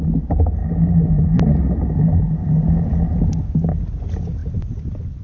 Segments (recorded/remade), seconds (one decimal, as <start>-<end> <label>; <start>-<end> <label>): 0.0-5.2 recorded